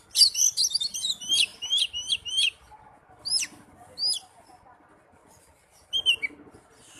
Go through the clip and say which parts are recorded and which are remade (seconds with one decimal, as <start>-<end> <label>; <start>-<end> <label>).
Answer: 0.0-7.0 recorded